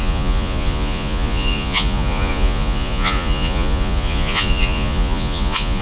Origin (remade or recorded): remade